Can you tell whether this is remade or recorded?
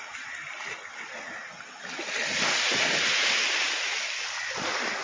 recorded